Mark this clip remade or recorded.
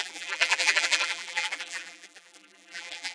remade